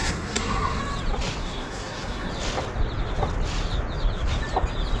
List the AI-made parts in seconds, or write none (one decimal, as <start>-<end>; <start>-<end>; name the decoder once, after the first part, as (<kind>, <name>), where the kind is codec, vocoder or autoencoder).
0.0-0.8 (codec, SNAC); 1.4-2.3